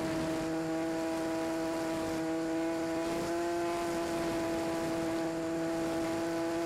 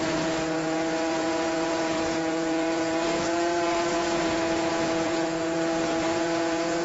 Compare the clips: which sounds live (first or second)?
first